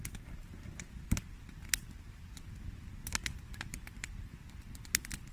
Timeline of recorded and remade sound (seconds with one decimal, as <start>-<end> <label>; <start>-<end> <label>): 0.0-5.3 recorded